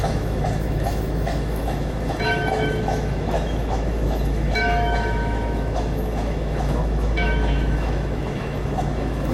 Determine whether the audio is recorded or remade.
remade